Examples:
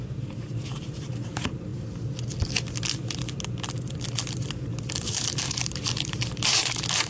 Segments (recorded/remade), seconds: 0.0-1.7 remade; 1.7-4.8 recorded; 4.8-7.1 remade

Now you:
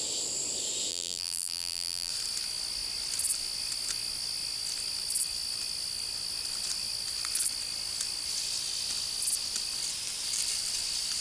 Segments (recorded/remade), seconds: 0.0-0.9 recorded; 0.9-2.1 remade; 2.1-11.2 recorded

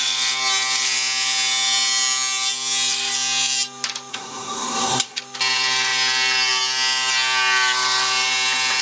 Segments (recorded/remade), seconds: 0.0-4.1 recorded; 4.1-5.2 remade; 5.2-8.8 recorded

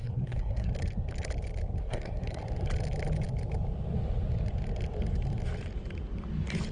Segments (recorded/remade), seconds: 0.0-0.7 remade; 0.7-1.8 recorded; 1.8-2.4 remade; 2.4-6.7 recorded